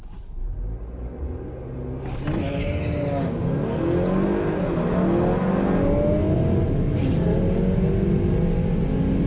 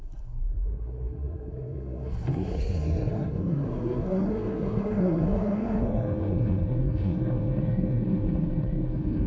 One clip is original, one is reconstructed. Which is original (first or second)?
first